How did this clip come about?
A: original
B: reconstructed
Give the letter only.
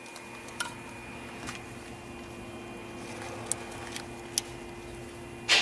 A